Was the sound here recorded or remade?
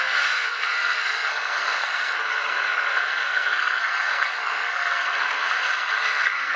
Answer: remade